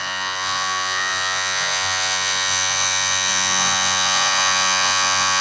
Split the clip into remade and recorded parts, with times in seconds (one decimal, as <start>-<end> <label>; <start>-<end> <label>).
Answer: 0.0-5.4 remade